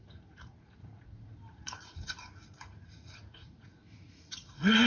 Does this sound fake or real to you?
fake